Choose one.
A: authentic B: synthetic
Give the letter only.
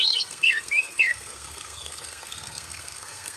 B